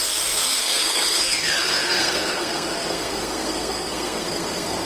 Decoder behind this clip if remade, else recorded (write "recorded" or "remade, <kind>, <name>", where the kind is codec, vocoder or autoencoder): remade, codec, SNAC